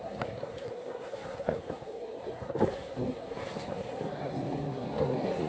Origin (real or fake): fake